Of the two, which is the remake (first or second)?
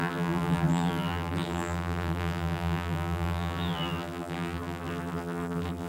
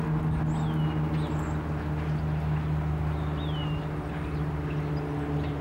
first